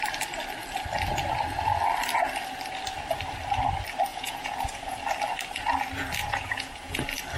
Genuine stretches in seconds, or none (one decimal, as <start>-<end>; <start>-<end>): 0.0-4.1; 5.0-6.2; 7.0-7.4